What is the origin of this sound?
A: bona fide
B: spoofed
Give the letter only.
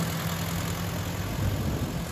A